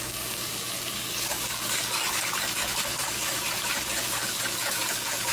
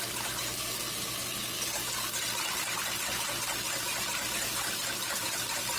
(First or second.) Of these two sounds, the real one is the second